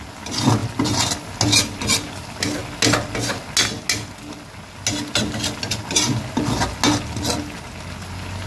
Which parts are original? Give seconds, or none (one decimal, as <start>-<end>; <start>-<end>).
0.0-8.5